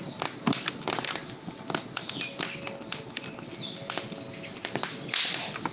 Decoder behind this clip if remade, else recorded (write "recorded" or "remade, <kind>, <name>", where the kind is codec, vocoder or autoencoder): recorded